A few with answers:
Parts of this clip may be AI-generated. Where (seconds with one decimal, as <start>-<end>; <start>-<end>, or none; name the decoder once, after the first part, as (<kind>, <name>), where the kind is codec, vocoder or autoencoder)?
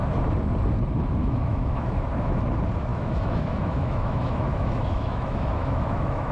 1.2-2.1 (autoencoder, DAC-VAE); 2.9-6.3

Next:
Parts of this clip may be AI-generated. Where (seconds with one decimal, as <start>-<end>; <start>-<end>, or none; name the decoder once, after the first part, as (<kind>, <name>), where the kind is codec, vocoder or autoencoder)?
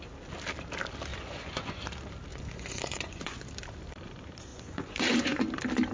1.1-1.8 (vocoder, Vocos); 2.3-3.4; 4.5-5.4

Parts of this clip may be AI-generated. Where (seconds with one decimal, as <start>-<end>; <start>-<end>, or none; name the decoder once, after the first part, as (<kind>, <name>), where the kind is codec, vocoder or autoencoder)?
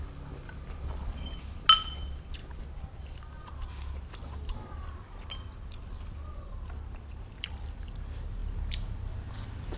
none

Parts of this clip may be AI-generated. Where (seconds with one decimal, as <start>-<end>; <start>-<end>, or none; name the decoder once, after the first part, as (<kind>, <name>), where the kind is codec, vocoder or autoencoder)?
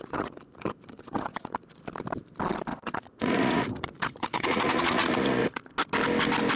0.0-1.8 (vocoder, Vocos); 2.7-5.7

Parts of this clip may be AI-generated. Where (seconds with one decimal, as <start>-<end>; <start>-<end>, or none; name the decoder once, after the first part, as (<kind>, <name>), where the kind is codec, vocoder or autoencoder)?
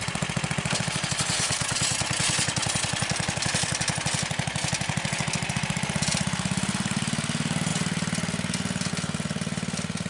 none